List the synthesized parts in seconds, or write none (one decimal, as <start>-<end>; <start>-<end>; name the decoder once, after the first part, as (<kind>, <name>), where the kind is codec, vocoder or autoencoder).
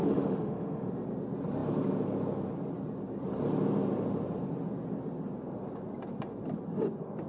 0.0-0.9 (autoencoder, DAC-VAE)